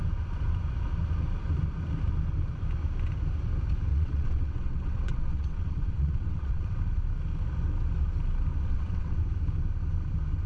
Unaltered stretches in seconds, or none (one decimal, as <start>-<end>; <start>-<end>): 0.0-3.9; 6.6-8.5; 9.2-10.5